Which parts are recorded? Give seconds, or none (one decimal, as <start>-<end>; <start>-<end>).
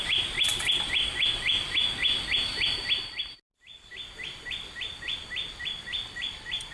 0.0-6.7